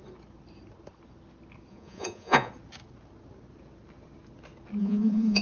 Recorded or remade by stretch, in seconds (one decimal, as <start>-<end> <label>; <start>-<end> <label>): 0.0-1.7 recorded; 1.7-2.5 remade; 2.5-4.8 recorded; 4.8-5.4 remade